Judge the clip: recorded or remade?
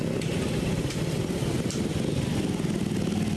recorded